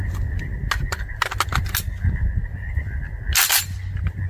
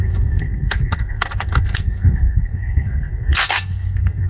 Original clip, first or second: first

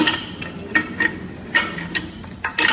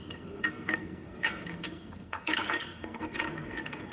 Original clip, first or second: first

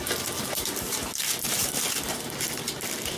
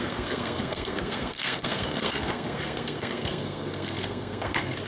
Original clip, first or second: first